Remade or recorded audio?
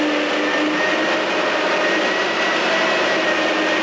recorded